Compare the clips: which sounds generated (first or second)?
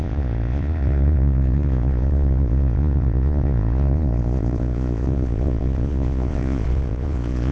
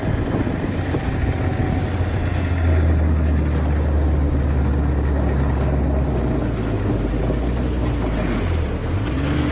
first